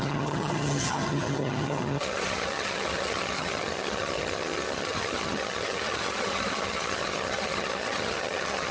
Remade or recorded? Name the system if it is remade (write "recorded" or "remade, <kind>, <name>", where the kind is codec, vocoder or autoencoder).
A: remade, vocoder, HiFi-GAN